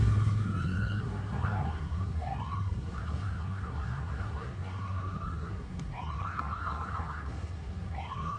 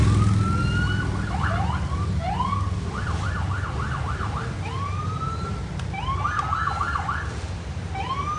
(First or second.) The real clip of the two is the second